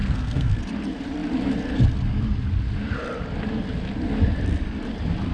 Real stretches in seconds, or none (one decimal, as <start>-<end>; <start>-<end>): 0.6-5.3